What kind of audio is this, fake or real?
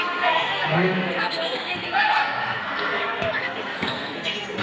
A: fake